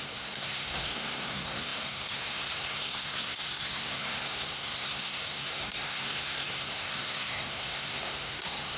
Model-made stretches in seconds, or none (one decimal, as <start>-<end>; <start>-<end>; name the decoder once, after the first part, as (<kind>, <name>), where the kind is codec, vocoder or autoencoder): 0.0-8.8 (codec, SNAC)